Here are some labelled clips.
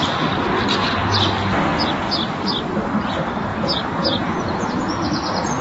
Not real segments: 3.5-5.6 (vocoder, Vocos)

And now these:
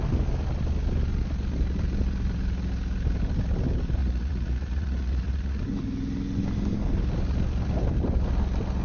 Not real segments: 4.0-5.6 (vocoder, Vocos)

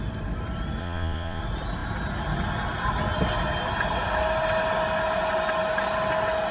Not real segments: 0.8-1.4 (vocoder, Vocos)

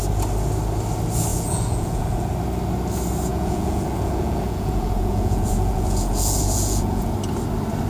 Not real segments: 1.3-2.3 (vocoder, Vocos); 3.3-7.1

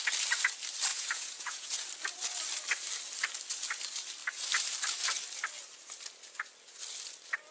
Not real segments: 0.9-1.8 (vocoder, Vocos)

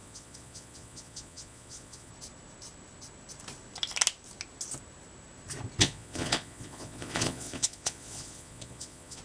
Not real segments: 0.0-2.1 (vocoder, Vocos); 5.8-9.2

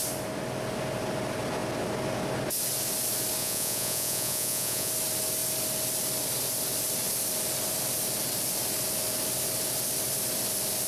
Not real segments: 3.4-4.9 (vocoder, Vocos)

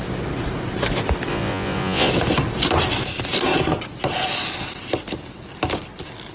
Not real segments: 1.3-2.1 (vocoder, Vocos)